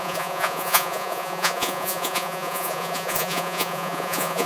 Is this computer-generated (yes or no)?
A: yes